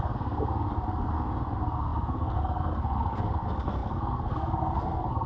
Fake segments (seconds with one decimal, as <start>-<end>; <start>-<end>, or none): 0.0-5.3